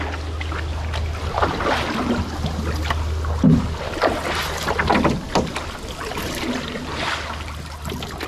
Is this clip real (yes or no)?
yes